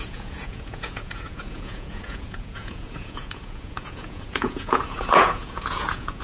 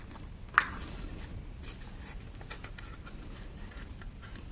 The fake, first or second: first